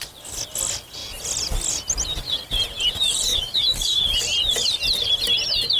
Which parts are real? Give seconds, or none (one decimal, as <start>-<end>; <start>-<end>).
0.0-3.3; 4.0-5.8